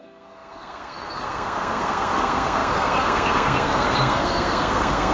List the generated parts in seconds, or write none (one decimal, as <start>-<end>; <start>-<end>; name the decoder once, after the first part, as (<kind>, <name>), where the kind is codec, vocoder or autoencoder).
0.0-5.1 (codec, SNAC)